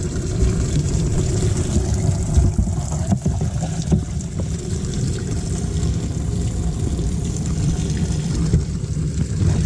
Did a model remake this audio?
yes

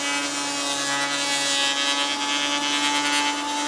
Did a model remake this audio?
no